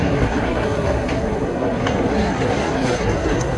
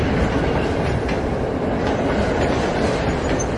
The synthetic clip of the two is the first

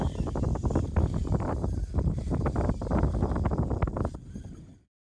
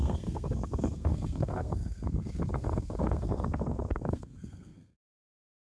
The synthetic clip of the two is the second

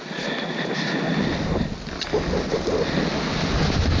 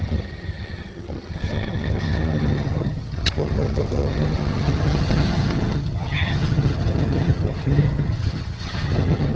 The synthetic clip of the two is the second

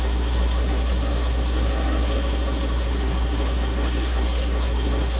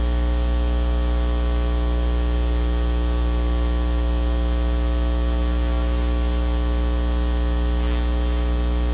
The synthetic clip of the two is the first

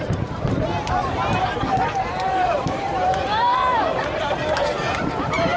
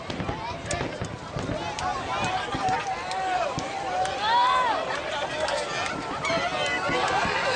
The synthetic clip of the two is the first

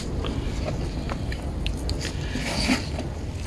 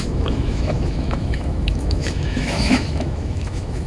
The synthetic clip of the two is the second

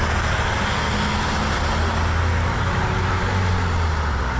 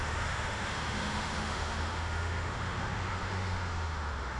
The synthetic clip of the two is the second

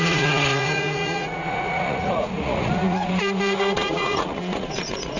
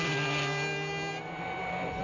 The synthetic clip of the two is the first